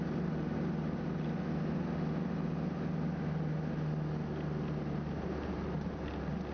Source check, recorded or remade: recorded